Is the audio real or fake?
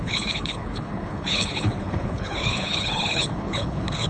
fake